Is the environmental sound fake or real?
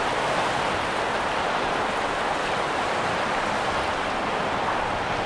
real